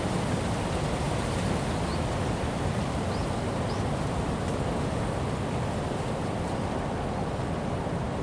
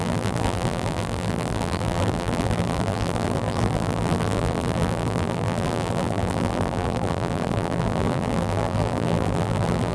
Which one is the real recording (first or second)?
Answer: first